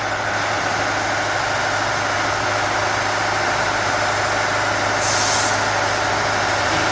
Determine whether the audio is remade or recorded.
recorded